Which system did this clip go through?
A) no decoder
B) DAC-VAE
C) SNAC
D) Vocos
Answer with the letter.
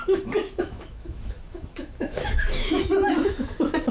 B